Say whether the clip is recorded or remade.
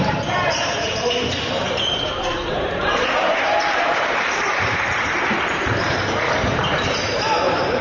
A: remade